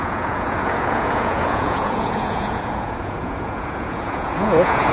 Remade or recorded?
remade